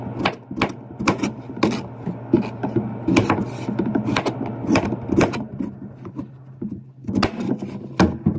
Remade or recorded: recorded